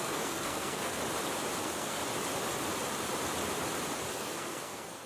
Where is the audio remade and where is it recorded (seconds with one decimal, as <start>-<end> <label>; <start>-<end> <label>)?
0.0-1.0 remade; 1.0-1.6 recorded; 1.6-2.0 remade; 2.0-4.1 recorded; 4.1-5.1 remade